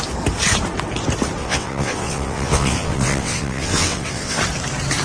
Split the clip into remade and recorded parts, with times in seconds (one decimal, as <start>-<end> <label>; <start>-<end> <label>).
0.0-1.4 recorded; 1.4-4.4 remade; 4.4-5.0 recorded